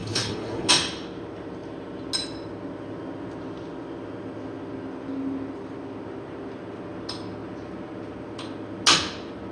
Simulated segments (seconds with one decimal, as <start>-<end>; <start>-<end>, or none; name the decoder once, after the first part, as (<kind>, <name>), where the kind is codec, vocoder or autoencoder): 0.0-0.7 (codec, HILCodec)